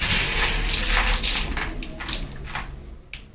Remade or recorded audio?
recorded